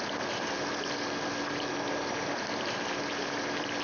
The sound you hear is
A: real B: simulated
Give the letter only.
A